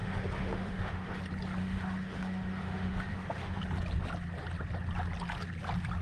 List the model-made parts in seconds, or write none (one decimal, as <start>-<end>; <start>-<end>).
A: 0.0-1.2; 1.6-3.6